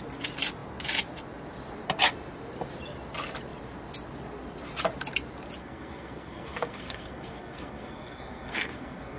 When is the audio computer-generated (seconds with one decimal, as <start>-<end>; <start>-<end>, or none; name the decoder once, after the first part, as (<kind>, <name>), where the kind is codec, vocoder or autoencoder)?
5.6-9.2 (codec, SNAC)